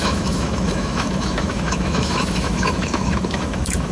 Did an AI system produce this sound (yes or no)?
yes